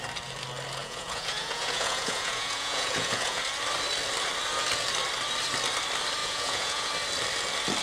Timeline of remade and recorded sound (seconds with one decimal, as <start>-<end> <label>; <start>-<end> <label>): 0.0-0.8 recorded; 0.8-3.4 remade; 3.4-6.2 recorded; 6.2-6.9 remade; 6.9-7.8 recorded